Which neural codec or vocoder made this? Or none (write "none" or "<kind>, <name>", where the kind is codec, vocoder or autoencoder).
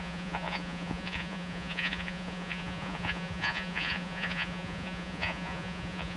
vocoder, Vocos